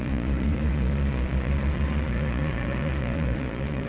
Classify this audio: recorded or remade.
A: remade